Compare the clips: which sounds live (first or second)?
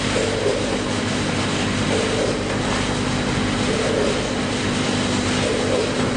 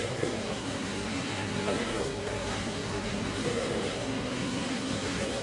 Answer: first